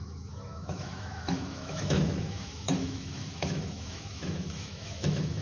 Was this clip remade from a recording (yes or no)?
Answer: yes